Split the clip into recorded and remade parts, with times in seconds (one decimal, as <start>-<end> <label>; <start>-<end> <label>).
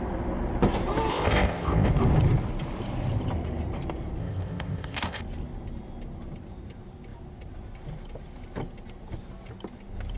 0.0-1.1 recorded; 1.1-1.9 remade; 1.9-4.2 recorded; 4.2-5.2 remade; 5.2-10.2 recorded